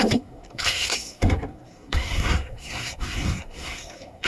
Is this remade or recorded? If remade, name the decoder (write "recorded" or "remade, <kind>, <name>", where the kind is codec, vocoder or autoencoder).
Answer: remade, codec, SNAC